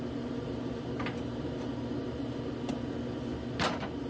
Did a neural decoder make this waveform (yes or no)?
no